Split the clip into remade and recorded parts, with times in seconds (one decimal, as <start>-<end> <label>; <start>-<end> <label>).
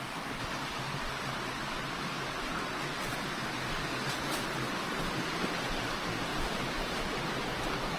0.0-6.3 recorded; 6.3-7.0 remade; 7.0-8.0 recorded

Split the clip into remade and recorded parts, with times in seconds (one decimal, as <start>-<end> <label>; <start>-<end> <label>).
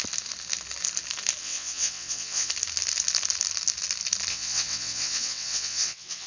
0.0-1.4 recorded; 1.4-2.5 remade; 2.5-4.3 recorded; 4.3-6.3 remade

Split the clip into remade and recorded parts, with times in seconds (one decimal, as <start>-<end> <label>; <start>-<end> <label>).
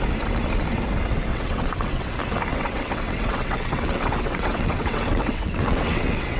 0.0-1.3 recorded; 1.3-2.1 remade; 2.1-2.5 recorded; 2.5-6.4 remade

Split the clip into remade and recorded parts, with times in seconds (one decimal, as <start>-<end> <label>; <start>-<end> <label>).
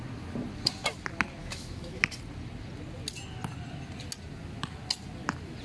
0.0-1.4 recorded; 1.4-2.0 remade; 2.0-5.6 recorded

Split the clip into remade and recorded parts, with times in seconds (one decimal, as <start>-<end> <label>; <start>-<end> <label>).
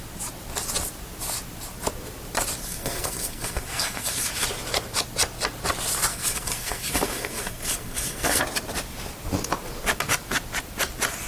0.0-2.6 recorded; 2.6-4.3 remade; 4.3-6.1 recorded; 6.1-8.4 remade; 8.4-11.3 recorded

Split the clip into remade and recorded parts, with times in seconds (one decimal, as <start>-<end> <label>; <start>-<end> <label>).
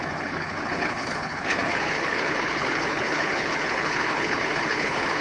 0.0-5.2 remade